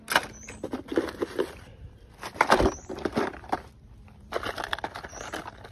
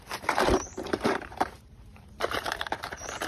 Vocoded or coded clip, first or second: second